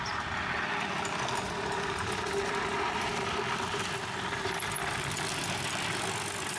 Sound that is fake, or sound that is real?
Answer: real